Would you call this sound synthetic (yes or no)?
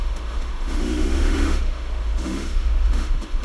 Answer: yes